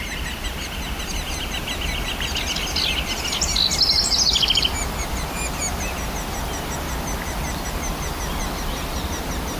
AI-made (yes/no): no